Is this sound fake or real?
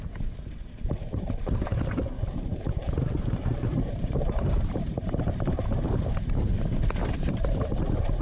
fake